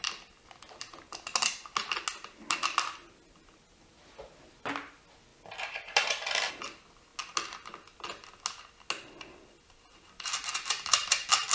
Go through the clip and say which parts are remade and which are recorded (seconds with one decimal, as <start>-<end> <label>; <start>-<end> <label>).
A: 0.0-5.3 recorded; 5.3-6.5 remade; 6.5-11.5 recorded